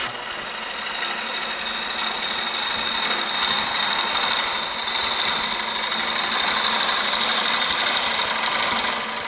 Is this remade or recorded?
recorded